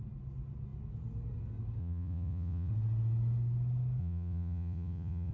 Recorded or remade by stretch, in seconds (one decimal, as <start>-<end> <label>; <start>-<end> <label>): 0.0-1.8 recorded; 1.8-2.7 remade; 2.7-4.0 recorded; 4.0-5.3 remade